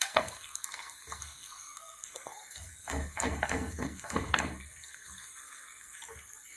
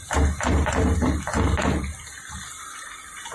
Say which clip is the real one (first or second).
second